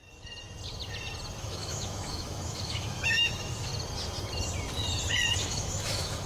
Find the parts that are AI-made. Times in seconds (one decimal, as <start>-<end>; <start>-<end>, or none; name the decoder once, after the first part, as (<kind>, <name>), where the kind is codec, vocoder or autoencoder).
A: 1.4-3.7 (autoencoder, DAC-VAE); 5.4-6.3